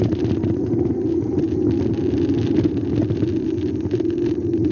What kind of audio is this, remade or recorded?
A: recorded